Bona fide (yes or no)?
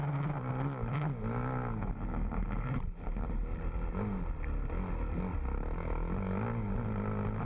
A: yes